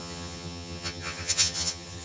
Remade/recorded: remade